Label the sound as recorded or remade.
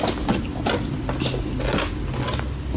recorded